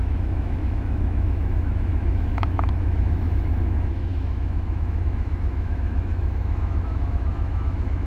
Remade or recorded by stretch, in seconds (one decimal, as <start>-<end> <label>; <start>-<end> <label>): 0.0-8.1 remade